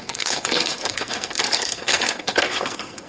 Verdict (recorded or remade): remade